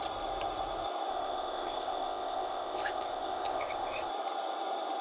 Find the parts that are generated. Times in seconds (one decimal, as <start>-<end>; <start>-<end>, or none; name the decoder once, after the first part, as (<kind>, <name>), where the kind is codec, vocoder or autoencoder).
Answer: 1.1-4.1 (codec, ZipCodec)